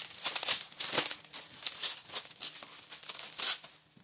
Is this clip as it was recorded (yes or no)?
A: yes